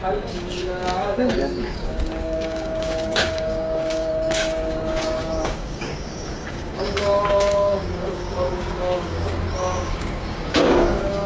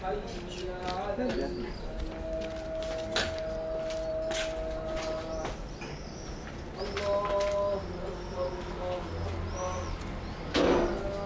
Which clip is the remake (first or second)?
first